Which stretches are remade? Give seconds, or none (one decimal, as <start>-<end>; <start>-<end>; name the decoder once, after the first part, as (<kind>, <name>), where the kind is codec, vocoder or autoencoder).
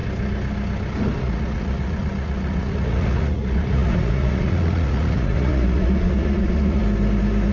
1.2-6.8 (vocoder, Vocos)